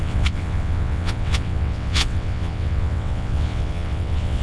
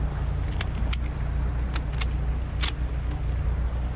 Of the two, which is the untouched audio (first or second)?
second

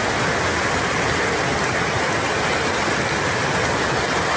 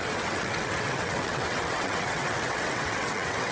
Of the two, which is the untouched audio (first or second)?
first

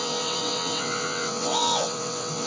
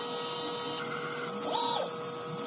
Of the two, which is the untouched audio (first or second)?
second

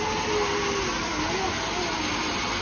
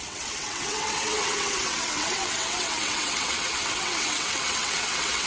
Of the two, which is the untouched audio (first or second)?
first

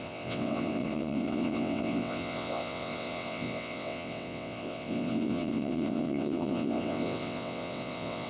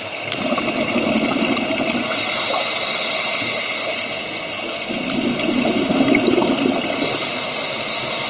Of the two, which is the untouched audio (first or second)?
second